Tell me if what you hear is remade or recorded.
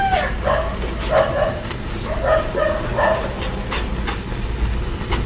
recorded